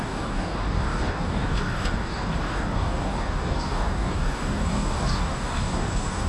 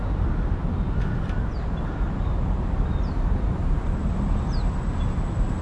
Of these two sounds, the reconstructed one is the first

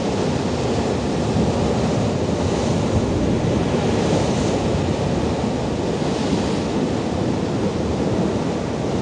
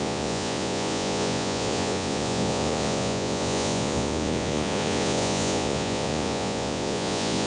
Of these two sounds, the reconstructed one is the second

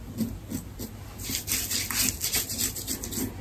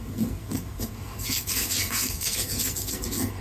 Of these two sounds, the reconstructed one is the second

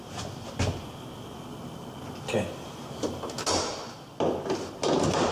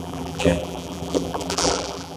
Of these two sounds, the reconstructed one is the second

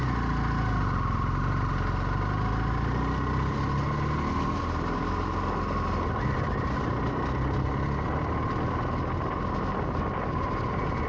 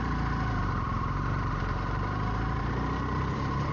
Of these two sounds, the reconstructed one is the second